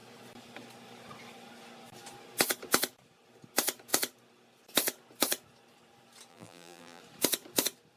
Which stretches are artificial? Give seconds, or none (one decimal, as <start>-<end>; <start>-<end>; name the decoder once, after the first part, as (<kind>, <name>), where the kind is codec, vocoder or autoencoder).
6.3-7.0 (vocoder, BigVGAN v2)